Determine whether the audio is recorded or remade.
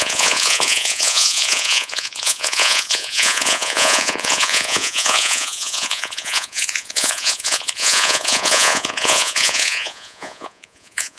remade